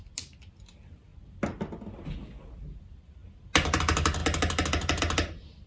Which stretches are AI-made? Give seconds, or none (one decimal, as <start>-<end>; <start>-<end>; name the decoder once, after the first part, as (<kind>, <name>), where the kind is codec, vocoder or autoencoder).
none